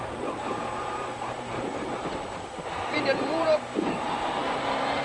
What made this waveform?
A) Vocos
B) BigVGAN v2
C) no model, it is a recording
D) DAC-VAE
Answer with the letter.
B